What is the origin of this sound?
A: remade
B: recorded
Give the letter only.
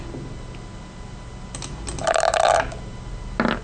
B